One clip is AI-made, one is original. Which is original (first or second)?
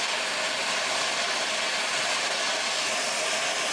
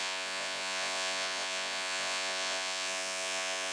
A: first